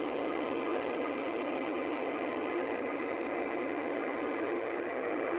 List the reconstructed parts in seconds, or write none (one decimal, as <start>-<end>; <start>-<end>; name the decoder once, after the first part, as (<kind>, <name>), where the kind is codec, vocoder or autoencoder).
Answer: 0.0-5.4 (vocoder, HiFi-GAN)